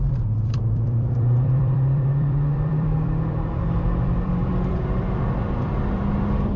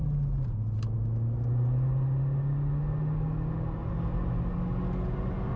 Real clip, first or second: second